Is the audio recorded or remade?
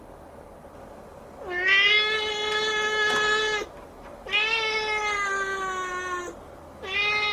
recorded